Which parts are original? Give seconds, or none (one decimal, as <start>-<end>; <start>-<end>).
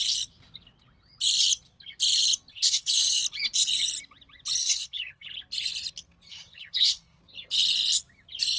0.0-2.5; 3.2-4.6; 5.3-6.3; 7.2-8.6